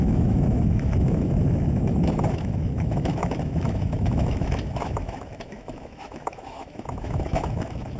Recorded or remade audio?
remade